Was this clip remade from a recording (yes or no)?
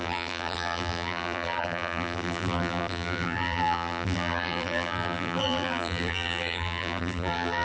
yes